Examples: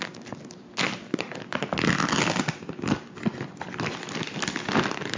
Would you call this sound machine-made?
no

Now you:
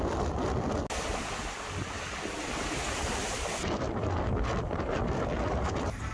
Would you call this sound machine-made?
no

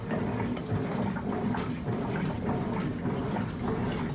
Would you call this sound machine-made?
no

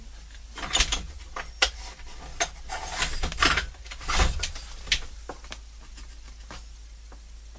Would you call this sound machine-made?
no